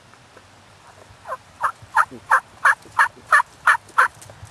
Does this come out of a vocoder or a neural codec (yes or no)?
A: no